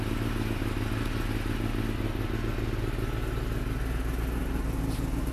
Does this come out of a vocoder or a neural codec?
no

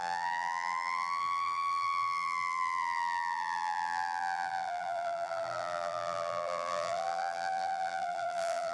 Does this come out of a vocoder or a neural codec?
yes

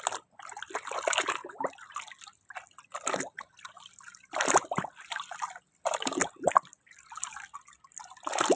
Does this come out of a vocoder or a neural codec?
no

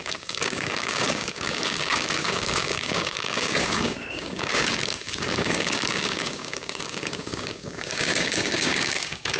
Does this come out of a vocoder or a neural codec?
yes